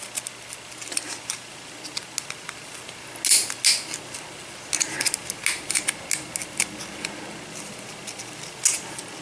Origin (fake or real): real